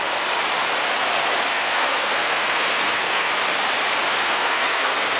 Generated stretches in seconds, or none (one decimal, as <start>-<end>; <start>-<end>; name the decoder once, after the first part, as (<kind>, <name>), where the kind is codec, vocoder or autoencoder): 1.5-3.3 (codec, SNAC); 4.2-5.2